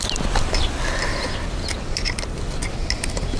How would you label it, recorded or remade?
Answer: recorded